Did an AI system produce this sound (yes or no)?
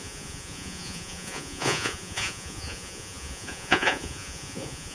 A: yes